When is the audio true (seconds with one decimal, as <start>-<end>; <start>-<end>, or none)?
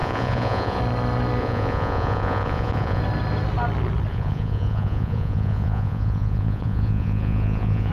0.8-1.4; 3.0-4.1